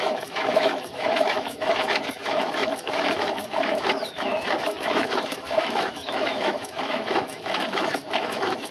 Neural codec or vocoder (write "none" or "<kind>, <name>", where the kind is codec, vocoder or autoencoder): autoencoder, DAC-VAE